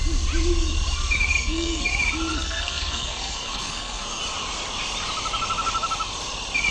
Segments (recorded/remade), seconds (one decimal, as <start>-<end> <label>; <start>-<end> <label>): 0.0-1.3 recorded; 1.3-1.9 remade; 1.9-2.3 recorded; 2.3-4.2 remade; 4.2-6.7 recorded